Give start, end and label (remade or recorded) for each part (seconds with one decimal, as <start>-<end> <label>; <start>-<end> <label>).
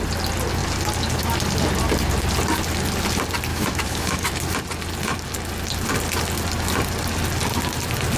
0.0-3.5 recorded; 3.5-4.4 remade; 4.4-8.2 recorded